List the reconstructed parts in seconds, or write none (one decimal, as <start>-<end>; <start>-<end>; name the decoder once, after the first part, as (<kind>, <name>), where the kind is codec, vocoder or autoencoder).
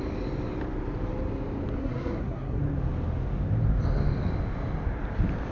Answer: 1.8-2.6 (codec, SNAC)